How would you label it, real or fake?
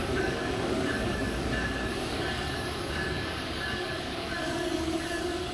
fake